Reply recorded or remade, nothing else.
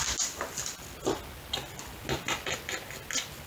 recorded